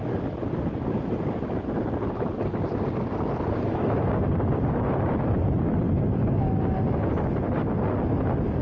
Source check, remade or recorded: recorded